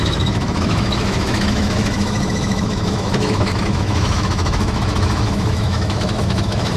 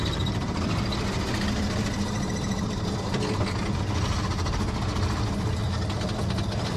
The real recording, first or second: second